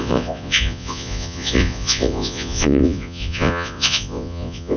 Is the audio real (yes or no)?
no